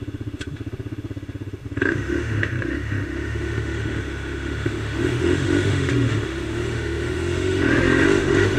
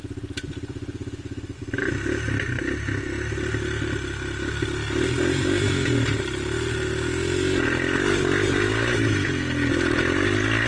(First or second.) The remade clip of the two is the first